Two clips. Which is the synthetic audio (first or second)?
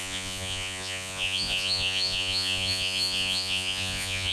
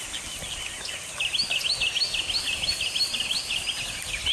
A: first